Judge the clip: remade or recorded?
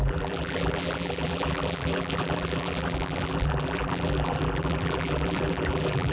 remade